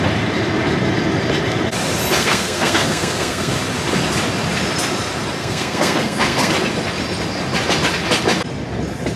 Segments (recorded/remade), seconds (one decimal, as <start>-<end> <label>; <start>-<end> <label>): 0.0-2.2 recorded; 2.2-3.5 remade; 3.5-5.4 recorded; 5.4-6.5 remade; 6.5-9.2 recorded